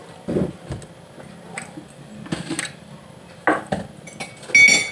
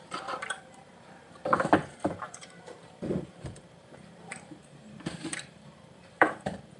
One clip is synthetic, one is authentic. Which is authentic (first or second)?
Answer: first